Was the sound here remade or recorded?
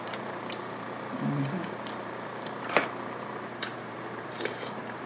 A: remade